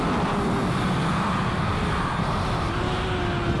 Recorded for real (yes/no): yes